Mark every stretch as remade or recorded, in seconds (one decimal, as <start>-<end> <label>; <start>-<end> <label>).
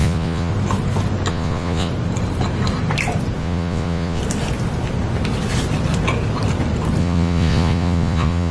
0.0-0.5 remade; 0.5-1.3 recorded; 1.3-1.9 remade; 1.9-3.4 recorded; 3.4-4.2 remade; 4.2-7.0 recorded; 7.0-8.5 remade